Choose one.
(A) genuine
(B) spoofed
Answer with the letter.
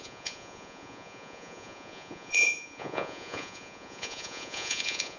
B